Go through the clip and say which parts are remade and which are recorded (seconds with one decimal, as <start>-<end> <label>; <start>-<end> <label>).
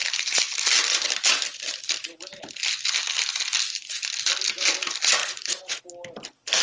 0.0-5.2 recorded; 5.2-5.8 remade; 5.8-6.6 recorded